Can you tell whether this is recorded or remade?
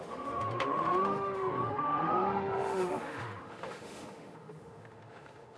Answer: remade